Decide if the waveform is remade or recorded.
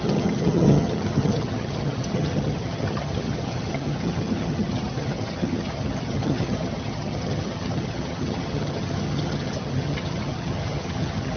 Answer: remade